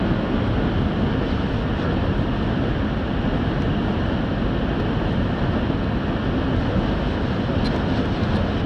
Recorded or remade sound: recorded